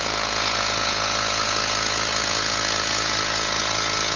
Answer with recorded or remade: remade